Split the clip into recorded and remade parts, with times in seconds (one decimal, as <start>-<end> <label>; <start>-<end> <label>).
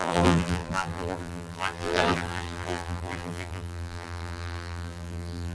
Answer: 0.0-5.5 remade